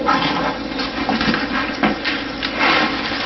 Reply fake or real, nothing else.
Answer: real